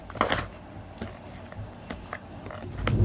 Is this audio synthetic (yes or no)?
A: no